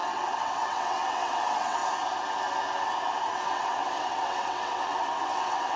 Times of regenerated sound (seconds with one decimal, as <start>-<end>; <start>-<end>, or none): 0.0-1.8; 3.3-5.8